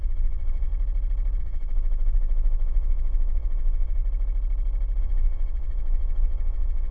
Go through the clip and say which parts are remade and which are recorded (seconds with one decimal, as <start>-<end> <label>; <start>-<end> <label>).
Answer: 0.0-0.7 remade; 0.7-1.4 recorded; 1.4-4.0 remade; 4.0-5.0 recorded; 5.0-6.9 remade